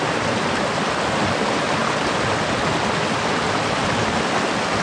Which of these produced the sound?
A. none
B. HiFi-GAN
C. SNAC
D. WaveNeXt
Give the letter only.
A